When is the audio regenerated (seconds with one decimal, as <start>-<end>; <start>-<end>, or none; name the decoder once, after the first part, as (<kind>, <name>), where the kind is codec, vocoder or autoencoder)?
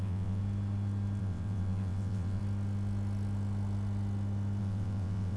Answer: 0.0-0.4 (vocoder, WaveNeXt); 1.2-2.4; 4.6-5.4